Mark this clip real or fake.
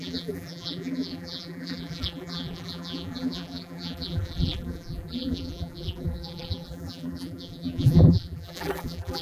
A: fake